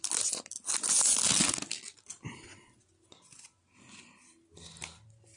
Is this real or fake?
real